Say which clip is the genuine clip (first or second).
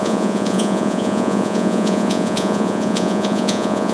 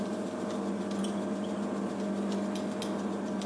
second